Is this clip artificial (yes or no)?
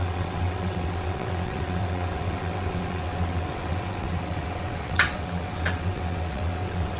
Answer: yes